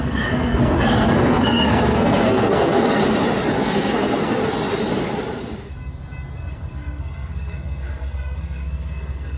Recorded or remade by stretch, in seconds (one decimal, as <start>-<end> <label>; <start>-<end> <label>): 0.0-3.0 remade; 3.0-3.6 recorded; 3.6-4.4 remade; 4.4-6.5 recorded; 6.5-9.4 remade